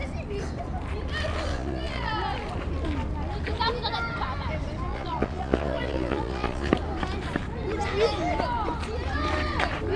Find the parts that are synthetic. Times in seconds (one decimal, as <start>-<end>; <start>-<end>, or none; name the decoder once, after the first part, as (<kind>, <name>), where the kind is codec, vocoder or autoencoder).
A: 1.5-2.1 (vocoder, Vocos); 4.9-6.7